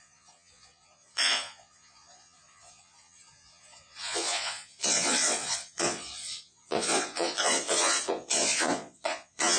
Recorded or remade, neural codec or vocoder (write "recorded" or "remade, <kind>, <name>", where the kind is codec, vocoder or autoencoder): remade, vocoder, Vocos